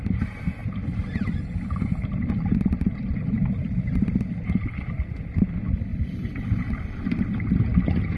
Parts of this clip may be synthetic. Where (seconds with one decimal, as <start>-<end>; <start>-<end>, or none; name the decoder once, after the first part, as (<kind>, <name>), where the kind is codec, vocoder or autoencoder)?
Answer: 0.6-4.5 (vocoder, BigVGAN v2); 5.9-7.5